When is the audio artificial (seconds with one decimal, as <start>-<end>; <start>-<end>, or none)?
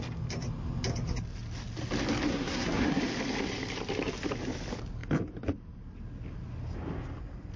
2.3-3.0